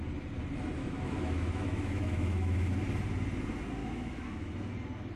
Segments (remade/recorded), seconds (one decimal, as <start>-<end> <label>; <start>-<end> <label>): 0.0-0.8 recorded; 0.8-2.7 remade; 2.7-3.8 recorded; 3.8-4.5 remade; 4.5-5.2 recorded